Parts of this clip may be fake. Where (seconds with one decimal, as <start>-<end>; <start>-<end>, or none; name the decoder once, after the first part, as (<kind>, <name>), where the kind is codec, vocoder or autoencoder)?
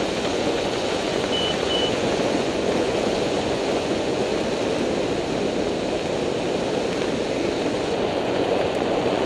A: 0.0-4.3 (vocoder, Vocos); 7.7-9.3